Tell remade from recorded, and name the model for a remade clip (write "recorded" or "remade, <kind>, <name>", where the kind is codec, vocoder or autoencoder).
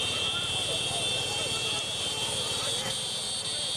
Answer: recorded